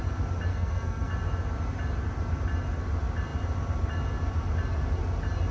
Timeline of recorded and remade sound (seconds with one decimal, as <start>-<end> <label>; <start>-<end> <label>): 0.0-0.5 recorded; 0.5-1.1 remade; 1.1-5.5 recorded